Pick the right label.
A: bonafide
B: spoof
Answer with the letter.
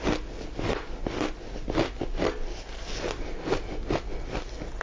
A